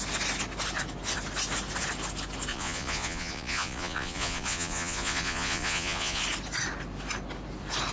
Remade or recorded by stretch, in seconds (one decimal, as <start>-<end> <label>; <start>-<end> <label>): 0.0-2.5 recorded; 2.5-6.2 remade; 6.2-7.9 recorded